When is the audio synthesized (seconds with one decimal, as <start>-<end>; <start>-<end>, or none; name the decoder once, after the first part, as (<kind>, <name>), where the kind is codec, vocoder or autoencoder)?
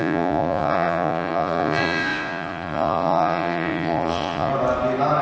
0.0-4.5 (vocoder, Vocos)